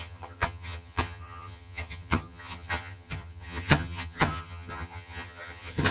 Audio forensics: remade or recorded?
remade